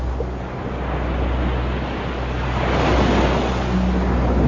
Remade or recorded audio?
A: recorded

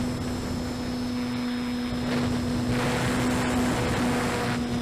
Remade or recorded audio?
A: recorded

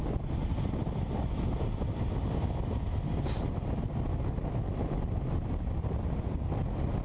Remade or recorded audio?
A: recorded